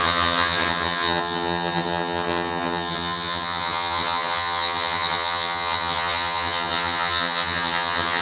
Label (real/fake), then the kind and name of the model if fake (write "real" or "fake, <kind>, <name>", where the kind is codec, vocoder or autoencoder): fake, vocoder, HiFi-GAN